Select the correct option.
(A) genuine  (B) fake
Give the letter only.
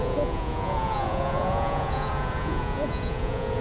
B